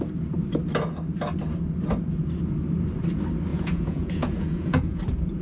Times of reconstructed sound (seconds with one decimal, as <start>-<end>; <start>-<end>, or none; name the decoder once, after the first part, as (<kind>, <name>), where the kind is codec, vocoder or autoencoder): 3.5-5.4 (vocoder, Vocos)